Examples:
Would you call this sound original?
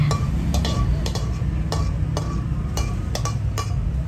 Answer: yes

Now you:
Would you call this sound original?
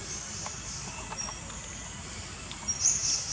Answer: yes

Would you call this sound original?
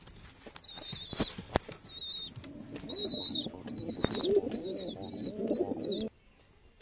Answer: yes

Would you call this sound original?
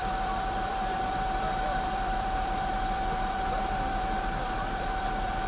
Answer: no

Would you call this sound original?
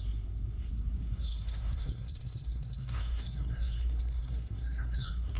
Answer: no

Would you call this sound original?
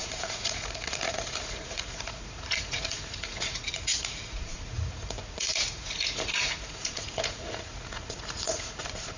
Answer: no